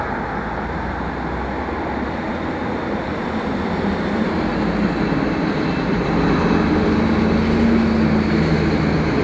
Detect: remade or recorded recorded